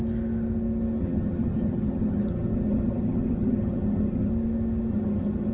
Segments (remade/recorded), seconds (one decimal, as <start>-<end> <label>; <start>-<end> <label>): 0.0-1.0 recorded; 1.0-4.3 remade; 4.3-4.9 recorded; 4.9-5.5 remade